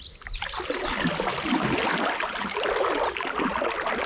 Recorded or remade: recorded